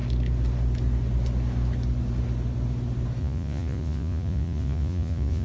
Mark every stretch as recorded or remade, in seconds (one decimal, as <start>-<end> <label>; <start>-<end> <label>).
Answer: 0.0-3.2 recorded; 3.2-5.4 remade